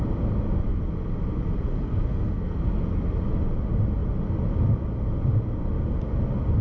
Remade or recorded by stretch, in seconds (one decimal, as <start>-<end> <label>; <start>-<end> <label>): 0.0-1.7 recorded; 1.7-2.8 remade; 2.8-6.6 recorded